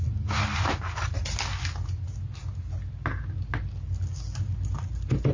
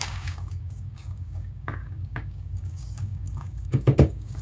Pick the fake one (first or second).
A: second